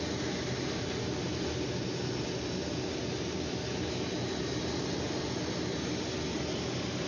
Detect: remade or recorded recorded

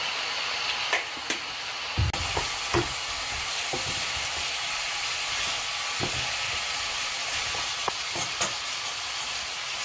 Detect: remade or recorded recorded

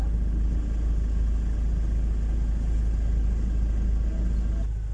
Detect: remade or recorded recorded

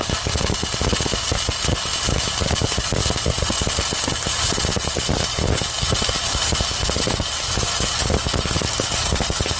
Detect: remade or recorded recorded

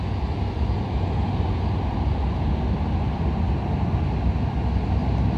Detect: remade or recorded recorded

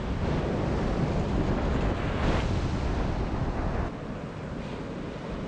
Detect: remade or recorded recorded